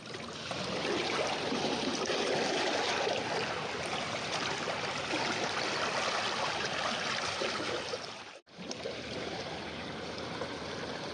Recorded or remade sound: recorded